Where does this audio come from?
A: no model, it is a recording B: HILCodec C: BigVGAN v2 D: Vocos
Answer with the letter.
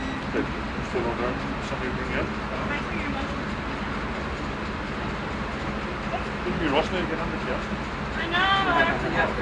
A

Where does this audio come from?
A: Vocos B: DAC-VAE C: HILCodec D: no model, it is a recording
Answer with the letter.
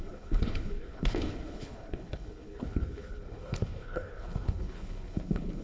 C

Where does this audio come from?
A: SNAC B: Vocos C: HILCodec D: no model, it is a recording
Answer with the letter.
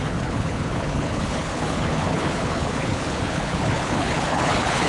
C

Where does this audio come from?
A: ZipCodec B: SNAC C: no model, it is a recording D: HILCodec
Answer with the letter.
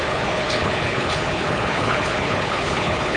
D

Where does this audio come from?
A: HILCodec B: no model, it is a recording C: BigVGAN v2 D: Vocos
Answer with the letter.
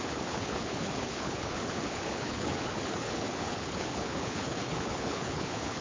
A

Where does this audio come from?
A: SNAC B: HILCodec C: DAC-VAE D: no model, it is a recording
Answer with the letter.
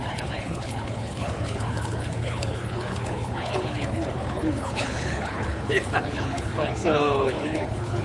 B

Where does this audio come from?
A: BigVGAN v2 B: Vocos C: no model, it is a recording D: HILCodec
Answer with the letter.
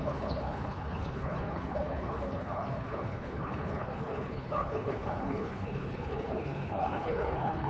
D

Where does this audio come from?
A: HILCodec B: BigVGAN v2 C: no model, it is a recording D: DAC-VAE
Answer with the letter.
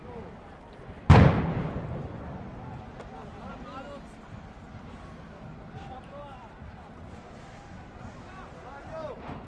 C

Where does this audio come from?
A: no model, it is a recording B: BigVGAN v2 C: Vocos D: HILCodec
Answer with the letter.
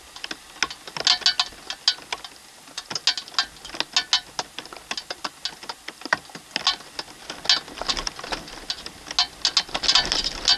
A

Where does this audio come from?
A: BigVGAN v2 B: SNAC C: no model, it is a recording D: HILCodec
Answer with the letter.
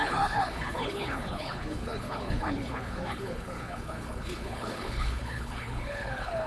D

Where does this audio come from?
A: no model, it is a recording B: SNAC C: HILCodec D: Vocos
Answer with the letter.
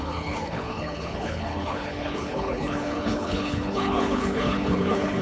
C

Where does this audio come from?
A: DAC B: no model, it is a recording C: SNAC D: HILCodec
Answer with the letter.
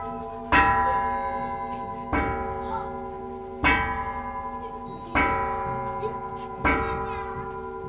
B